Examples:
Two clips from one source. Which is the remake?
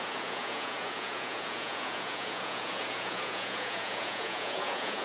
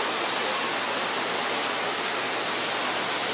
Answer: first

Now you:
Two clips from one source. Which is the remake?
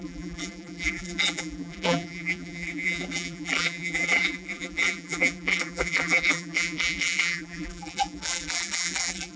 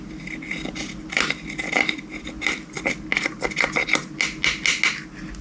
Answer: first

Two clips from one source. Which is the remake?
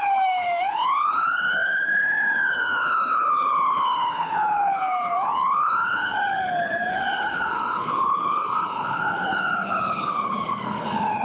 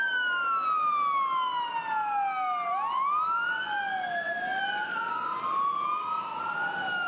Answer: first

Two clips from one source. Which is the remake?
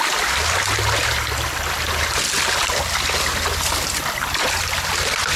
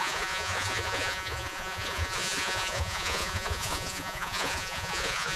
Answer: second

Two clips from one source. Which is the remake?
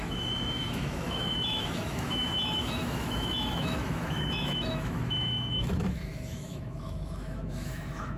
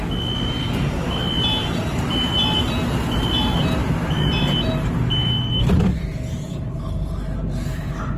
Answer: first